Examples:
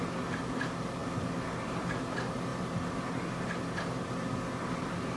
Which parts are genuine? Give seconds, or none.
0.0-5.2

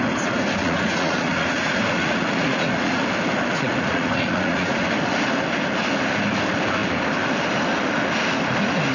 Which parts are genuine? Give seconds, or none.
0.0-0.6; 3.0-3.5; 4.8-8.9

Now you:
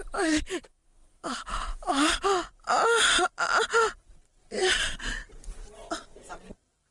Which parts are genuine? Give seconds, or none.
0.0-4.6; 5.1-6.9

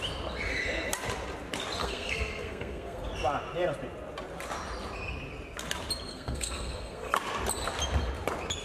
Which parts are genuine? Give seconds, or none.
0.0-1.8; 3.1-6.1; 7.1-8.6

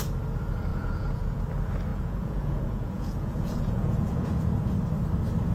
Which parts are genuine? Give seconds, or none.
0.0-0.7; 1.4-1.9; 4.6-5.5

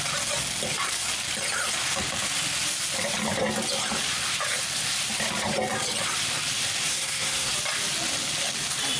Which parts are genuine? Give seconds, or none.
0.0-6.9; 7.5-9.0

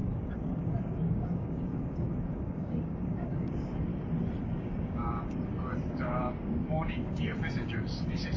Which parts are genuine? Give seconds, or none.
3.9-4.4

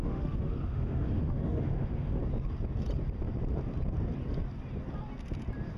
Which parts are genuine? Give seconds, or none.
2.2-5.8